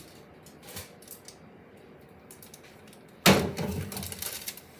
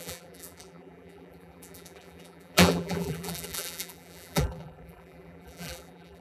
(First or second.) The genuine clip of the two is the first